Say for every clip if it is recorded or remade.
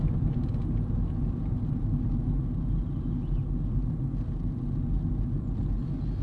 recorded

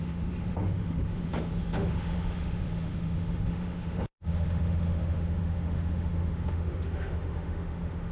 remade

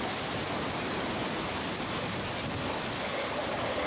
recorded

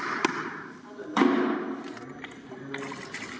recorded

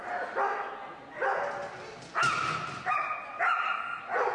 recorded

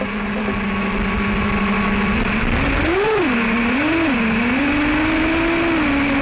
recorded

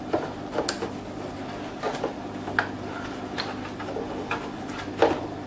recorded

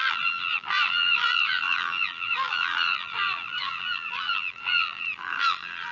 remade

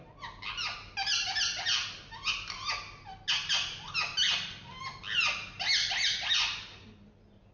recorded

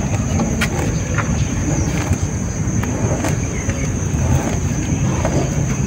recorded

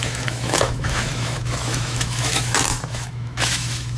remade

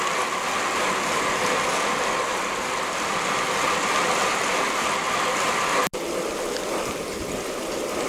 recorded